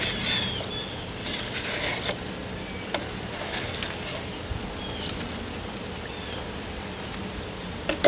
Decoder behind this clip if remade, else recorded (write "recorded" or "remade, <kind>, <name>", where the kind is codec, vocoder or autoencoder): recorded